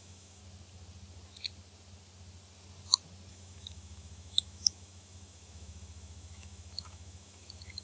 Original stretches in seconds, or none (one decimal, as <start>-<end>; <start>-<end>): 0.4-3.3